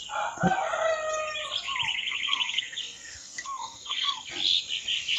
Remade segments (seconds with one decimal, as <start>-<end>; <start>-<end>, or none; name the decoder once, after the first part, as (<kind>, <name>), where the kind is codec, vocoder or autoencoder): 1.9-4.3 (codec, SNAC)